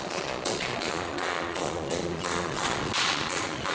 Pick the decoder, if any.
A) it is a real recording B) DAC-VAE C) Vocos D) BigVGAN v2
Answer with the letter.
C